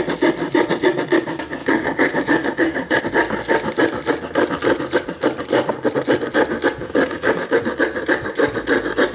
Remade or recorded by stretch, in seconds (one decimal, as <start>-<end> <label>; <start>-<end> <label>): 0.0-1.6 recorded; 1.6-3.0 remade; 3.0-6.8 recorded; 6.8-7.6 remade; 7.6-9.1 recorded